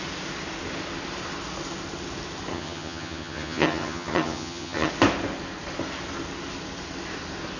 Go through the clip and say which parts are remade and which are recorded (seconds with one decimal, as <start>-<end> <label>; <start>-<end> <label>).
0.0-2.5 recorded; 2.5-4.9 remade; 4.9-7.6 recorded